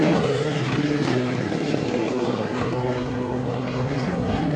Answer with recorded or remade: remade